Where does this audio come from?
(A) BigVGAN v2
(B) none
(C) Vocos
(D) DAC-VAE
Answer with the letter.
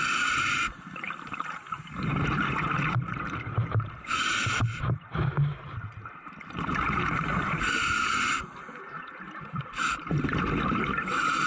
A